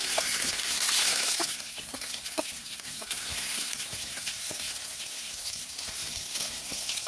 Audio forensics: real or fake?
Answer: fake